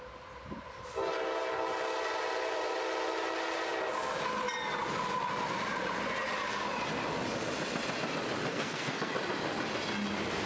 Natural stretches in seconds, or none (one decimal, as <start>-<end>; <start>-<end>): 0.0-8.5; 9.1-10.5